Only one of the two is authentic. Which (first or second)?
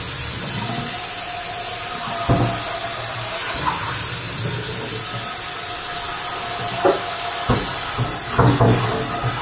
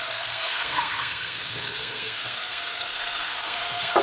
first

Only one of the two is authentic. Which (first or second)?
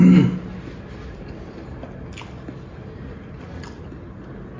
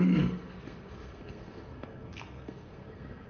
first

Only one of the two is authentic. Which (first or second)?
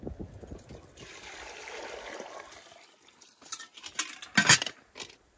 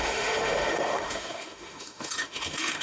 first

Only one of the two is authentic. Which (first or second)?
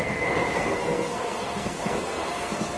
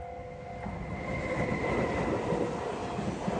second